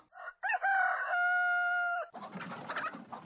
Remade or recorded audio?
recorded